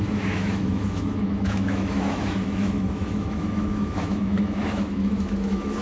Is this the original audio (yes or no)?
no